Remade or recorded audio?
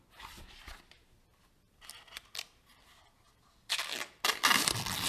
recorded